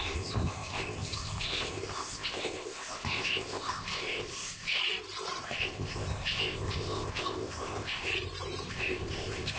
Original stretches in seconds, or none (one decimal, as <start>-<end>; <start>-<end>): 4.8-5.4; 8.1-8.7